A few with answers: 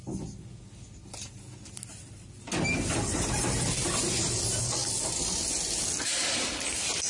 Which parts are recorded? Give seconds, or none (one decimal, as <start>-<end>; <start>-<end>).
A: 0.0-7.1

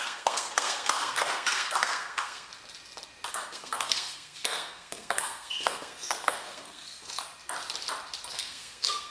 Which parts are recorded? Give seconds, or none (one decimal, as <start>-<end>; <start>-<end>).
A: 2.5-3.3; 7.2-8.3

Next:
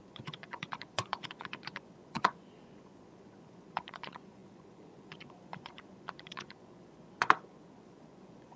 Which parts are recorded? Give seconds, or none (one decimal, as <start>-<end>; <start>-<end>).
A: none

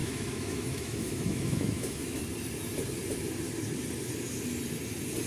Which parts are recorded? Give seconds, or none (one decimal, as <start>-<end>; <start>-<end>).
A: 2.2-5.3

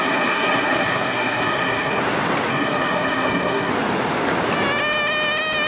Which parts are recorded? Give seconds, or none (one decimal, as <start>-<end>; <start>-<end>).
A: 2.0-2.5; 3.7-5.7